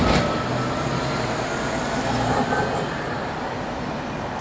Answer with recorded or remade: recorded